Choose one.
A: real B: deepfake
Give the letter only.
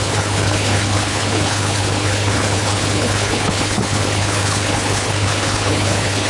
B